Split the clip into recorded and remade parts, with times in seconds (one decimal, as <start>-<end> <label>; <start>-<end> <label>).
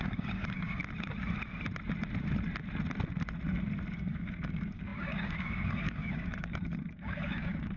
0.0-0.8 remade; 0.8-3.9 recorded; 3.9-7.8 remade